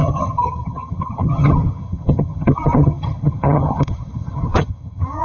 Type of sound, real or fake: fake